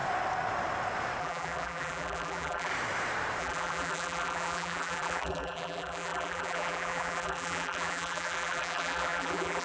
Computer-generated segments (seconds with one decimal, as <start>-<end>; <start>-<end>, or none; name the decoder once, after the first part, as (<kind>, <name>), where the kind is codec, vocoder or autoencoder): 1.2-2.7 (vocoder, BigVGAN v2); 3.4-9.6